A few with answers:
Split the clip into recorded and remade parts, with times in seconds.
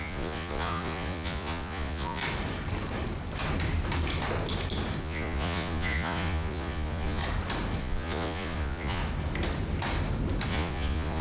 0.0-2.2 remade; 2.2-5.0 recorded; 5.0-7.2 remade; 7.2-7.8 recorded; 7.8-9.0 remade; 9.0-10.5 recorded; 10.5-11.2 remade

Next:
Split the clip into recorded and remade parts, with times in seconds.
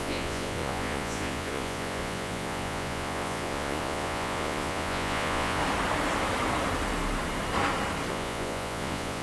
0.0-5.6 remade; 5.6-8.1 recorded; 8.1-9.2 remade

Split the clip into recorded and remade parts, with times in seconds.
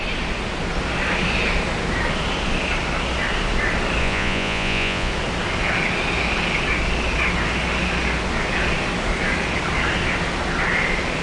0.0-4.0 recorded; 4.0-5.1 remade; 5.1-11.2 recorded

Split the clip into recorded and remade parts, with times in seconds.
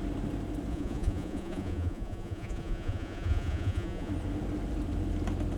0.0-0.7 recorded; 0.7-4.1 remade; 4.1-5.6 recorded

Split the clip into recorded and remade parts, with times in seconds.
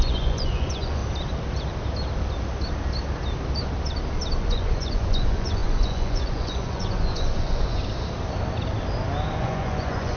0.0-1.0 remade; 1.0-4.4 recorded; 4.4-7.8 remade; 7.8-9.4 recorded; 9.4-10.2 remade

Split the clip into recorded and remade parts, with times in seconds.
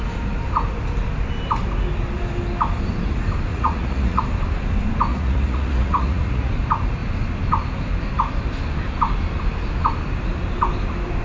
0.0-3.5 recorded; 3.5-4.2 remade; 4.2-5.1 recorded; 5.1-6.5 remade; 6.5-11.2 recorded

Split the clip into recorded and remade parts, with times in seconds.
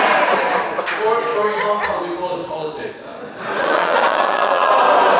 0.0-2.4 recorded; 2.4-2.9 remade; 2.9-3.6 recorded; 3.6-4.7 remade; 4.7-5.2 recorded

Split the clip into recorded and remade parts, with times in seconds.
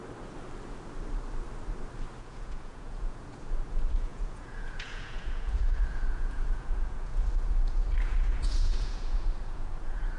0.0-2.2 recorded; 2.2-10.2 remade